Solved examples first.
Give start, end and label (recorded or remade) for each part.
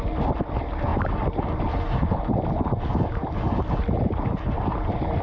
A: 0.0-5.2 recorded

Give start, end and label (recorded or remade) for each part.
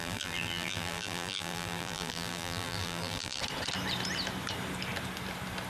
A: 0.0-3.4 remade; 3.4-5.7 recorded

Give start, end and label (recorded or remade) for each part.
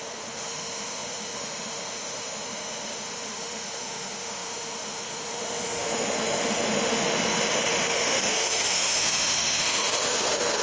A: 0.0-10.6 remade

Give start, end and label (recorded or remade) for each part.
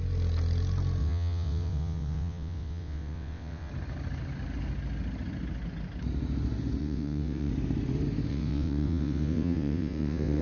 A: 0.0-1.0 recorded; 1.0-3.7 remade; 3.7-6.8 recorded; 6.8-7.5 remade; 7.5-8.3 recorded; 8.3-10.4 remade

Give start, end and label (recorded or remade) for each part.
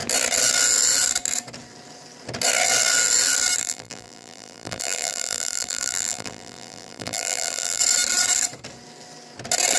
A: 0.0-3.6 recorded; 3.6-7.8 remade; 7.8-9.8 recorded